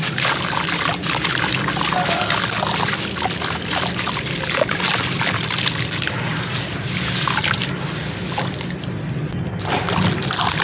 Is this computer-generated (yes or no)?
no